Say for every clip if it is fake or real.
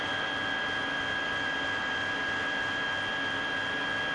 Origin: real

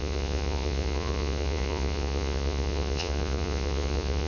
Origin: fake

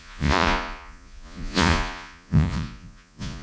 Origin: fake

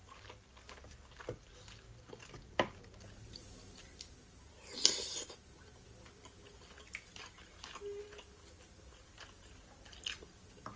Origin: real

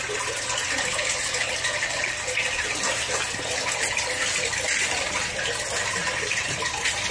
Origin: real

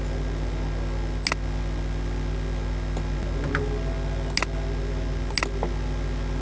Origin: real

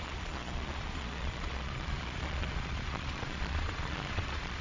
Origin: fake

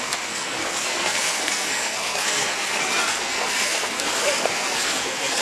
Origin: fake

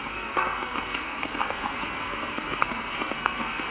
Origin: fake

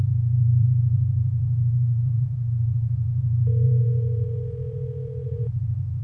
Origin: fake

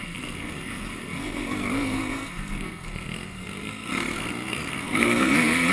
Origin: fake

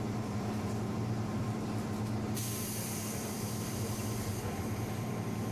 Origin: fake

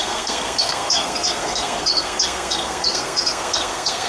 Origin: fake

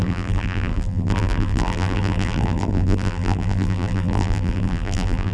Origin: fake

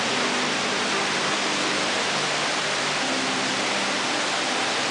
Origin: real